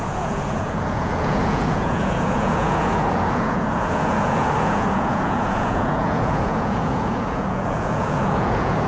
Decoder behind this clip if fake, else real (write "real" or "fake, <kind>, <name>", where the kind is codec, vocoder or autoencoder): fake, vocoder, Vocos